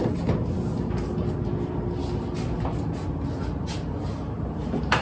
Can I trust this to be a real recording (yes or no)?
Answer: yes